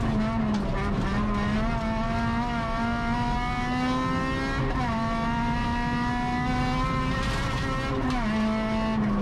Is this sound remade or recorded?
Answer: recorded